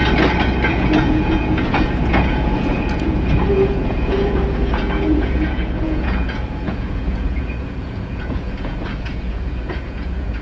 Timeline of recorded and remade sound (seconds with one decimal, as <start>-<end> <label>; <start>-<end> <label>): 0.0-0.7 recorded; 0.7-10.4 remade